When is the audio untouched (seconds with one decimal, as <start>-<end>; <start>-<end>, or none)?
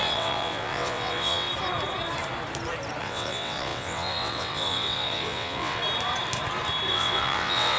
1.5-3.0; 5.8-6.9